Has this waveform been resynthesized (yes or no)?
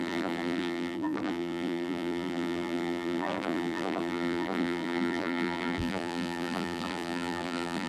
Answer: yes